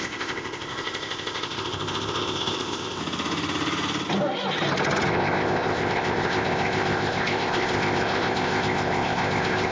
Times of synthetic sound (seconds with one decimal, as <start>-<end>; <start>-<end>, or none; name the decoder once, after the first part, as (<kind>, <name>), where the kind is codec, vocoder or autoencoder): 0.0-3.0 (codec, ZipCodec); 5.1-9.7